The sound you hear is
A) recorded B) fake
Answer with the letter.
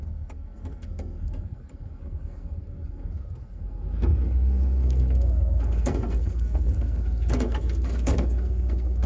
B